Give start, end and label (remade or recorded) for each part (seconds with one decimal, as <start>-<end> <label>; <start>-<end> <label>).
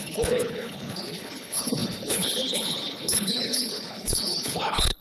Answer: 0.0-5.0 remade